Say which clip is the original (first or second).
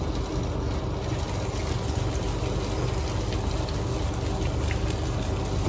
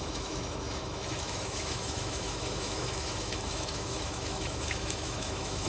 first